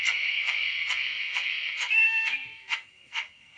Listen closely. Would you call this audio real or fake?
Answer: fake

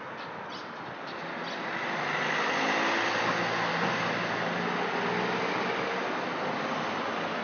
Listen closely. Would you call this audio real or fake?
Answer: real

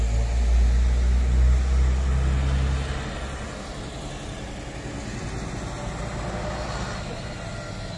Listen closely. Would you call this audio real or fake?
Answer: real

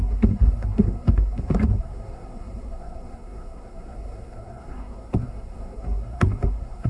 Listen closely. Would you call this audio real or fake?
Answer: fake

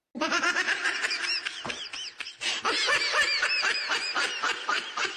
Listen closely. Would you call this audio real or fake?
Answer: real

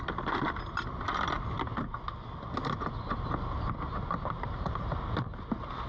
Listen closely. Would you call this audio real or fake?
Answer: real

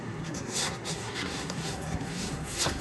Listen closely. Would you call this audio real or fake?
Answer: fake